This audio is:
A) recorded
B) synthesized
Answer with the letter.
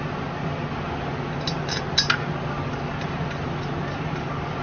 A